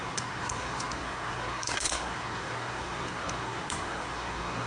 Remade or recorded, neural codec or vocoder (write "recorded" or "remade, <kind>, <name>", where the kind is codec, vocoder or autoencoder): remade, codec, SNAC